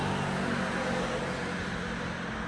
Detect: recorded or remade recorded